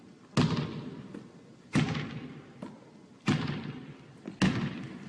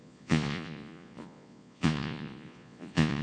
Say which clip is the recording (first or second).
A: first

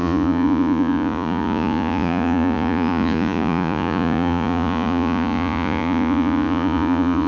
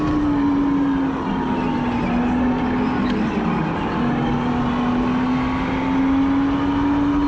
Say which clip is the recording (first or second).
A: second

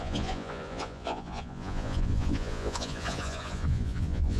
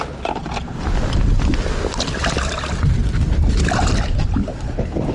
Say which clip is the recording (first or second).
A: second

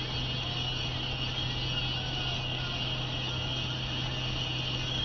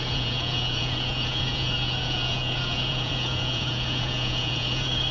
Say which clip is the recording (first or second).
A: first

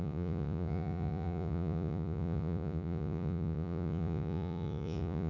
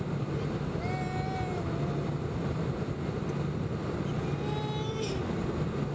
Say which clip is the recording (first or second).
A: second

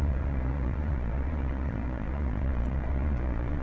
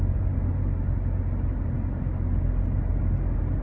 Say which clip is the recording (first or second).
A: second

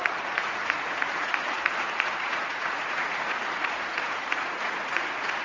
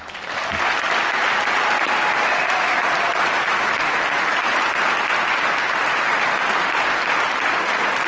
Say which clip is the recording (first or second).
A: second